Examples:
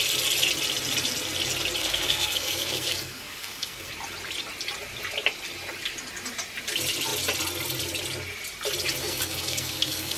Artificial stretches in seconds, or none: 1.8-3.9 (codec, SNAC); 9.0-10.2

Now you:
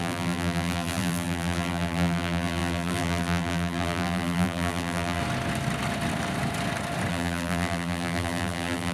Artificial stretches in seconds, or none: 0.0-5.2 (vocoder, BigVGAN v2); 7.1-8.9

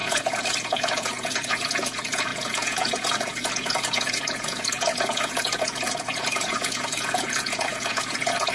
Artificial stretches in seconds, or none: 0.0-8.5 (vocoder, Vocos)

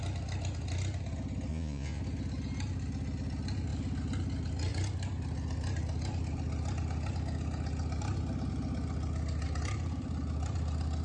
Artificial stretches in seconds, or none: 1.5-2.0 (vocoder, Vocos)

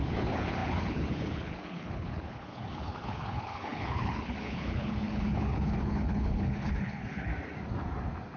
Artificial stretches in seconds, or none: 0.0-7.3 (codec, HILCodec)

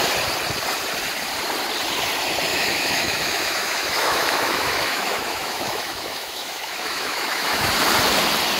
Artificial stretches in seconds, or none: 2.5-7.7 (autoencoder, DAC-VAE)

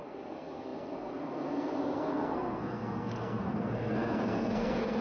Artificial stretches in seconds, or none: 0.0-5.0 (codec, SNAC)